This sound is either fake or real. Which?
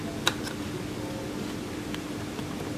real